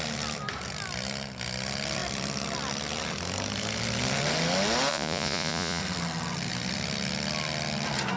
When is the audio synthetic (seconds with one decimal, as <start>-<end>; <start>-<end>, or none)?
4.9-5.8